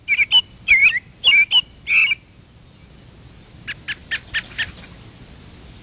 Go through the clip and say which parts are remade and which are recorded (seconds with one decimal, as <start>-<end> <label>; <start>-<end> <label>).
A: 0.0-5.8 recorded